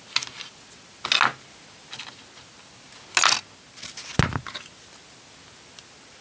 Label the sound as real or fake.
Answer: real